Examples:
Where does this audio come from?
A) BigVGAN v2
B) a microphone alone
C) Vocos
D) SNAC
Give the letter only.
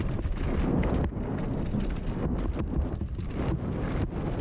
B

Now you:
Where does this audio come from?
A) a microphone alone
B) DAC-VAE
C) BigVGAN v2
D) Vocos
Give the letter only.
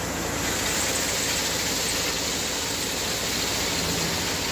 A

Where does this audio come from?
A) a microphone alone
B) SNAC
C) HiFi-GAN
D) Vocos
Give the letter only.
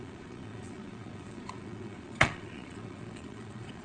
D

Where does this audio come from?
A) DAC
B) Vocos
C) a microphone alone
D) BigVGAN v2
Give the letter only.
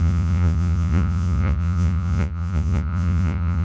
B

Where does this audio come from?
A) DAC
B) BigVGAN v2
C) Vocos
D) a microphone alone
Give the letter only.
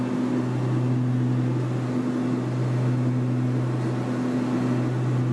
D